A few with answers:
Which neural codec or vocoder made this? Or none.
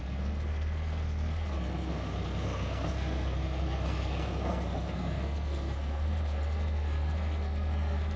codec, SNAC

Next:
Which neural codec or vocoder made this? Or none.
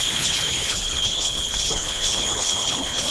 codec, HILCodec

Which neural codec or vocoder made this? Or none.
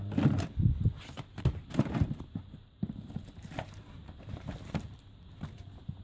vocoder, BigVGAN v2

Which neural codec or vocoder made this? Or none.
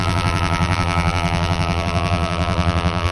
vocoder, BigVGAN v2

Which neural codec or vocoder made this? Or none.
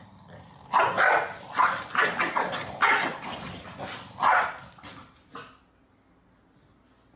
none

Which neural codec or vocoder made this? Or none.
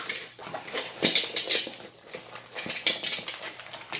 none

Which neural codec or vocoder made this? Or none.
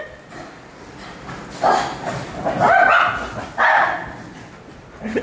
none